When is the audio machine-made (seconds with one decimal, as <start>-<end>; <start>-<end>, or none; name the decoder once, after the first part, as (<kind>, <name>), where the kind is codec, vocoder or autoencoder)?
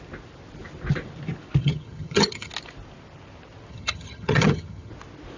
1.6-2.5 (vocoder, HiFi-GAN); 3.7-4.9